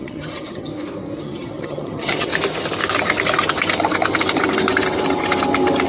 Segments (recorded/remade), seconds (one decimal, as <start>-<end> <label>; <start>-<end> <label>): 0.0-0.7 remade; 0.7-1.2 recorded; 1.2-2.3 remade; 2.3-5.9 recorded